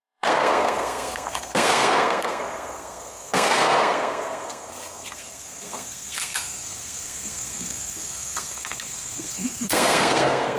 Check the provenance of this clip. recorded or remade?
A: remade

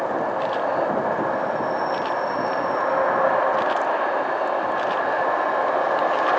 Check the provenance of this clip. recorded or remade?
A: recorded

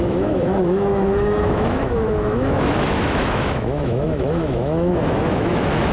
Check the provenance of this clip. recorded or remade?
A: remade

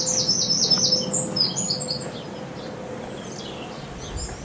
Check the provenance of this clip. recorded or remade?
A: recorded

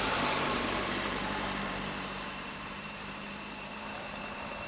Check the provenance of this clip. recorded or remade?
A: remade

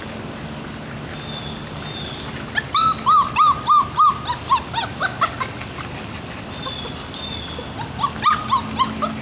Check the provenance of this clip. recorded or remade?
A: recorded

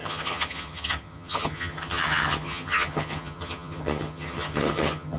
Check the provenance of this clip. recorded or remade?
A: remade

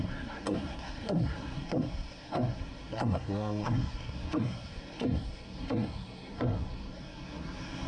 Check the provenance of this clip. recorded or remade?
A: remade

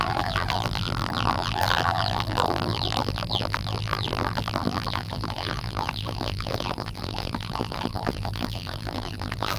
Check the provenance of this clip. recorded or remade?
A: remade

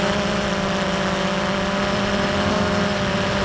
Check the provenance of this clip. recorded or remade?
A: recorded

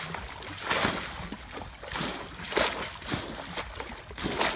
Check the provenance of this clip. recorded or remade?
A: recorded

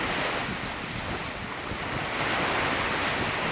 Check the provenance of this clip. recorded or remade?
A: recorded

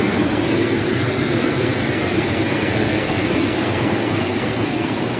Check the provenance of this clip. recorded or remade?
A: remade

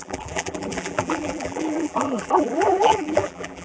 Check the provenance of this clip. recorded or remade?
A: remade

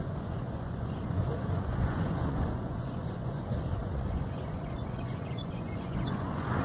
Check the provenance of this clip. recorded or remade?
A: remade